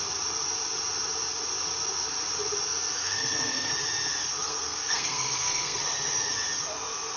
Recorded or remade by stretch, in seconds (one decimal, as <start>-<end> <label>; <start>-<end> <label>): 0.0-3.0 recorded; 3.0-3.7 remade; 3.7-4.4 recorded; 4.4-5.8 remade; 5.8-7.2 recorded